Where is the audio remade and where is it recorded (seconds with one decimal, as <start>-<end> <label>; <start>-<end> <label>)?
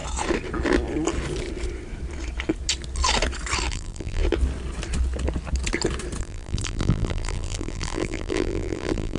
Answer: 0.0-3.7 recorded; 3.7-4.2 remade; 4.2-6.2 recorded; 6.2-9.2 remade